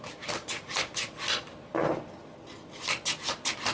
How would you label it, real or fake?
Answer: real